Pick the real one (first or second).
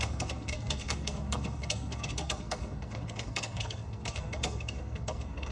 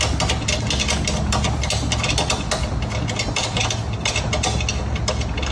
second